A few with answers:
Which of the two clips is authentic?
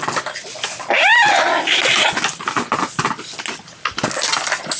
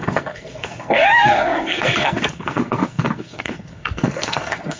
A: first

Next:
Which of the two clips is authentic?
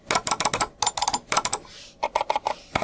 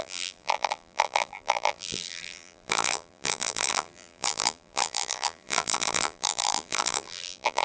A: first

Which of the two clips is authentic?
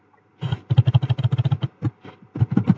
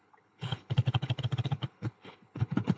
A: first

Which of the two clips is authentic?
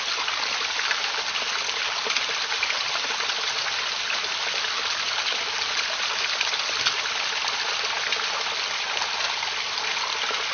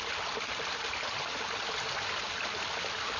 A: first